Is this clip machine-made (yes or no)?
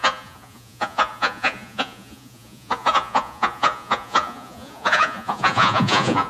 yes